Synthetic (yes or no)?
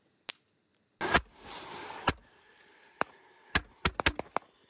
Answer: no